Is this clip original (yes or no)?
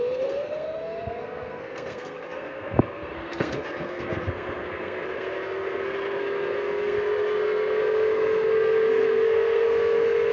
no